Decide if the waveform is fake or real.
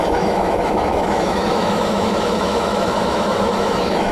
fake